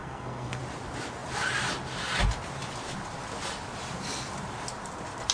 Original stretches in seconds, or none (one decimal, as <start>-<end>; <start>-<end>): 0.6-5.3